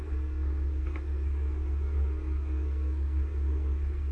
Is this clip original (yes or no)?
no